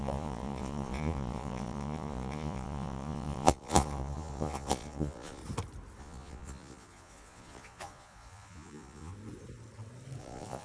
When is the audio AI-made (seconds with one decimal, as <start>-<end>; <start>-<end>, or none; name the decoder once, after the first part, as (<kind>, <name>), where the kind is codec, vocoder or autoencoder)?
0.0-5.4 (vocoder, Vocos); 6.0-9.1; 10.2-10.6